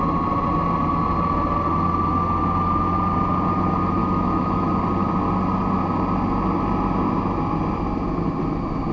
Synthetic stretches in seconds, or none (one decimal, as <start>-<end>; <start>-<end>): 4.0-4.7